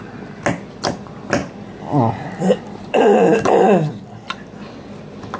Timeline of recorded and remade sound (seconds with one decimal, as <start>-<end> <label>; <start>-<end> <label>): 0.0-1.4 recorded; 1.4-4.3 remade; 4.3-5.4 recorded